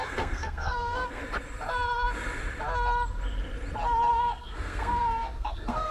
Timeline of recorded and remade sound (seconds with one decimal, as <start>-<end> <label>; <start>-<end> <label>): 0.0-1.2 remade; 1.2-4.1 recorded; 4.1-5.9 remade